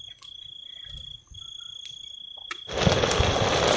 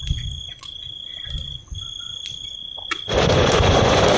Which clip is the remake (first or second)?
second